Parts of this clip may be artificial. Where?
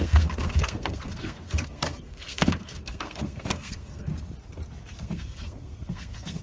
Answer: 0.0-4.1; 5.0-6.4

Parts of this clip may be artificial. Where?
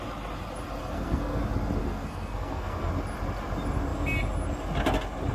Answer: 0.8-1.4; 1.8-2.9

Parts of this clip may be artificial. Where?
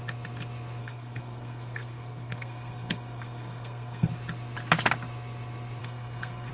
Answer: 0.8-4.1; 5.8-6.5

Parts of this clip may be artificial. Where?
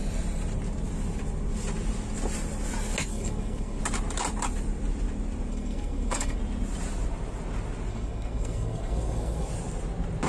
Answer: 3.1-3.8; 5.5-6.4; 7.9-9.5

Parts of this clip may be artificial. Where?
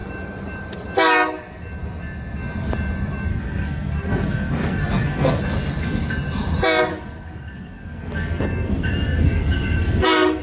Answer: 3.3-5.4; 6.9-10.4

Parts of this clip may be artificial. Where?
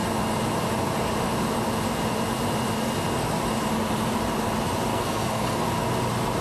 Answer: 4.9-5.7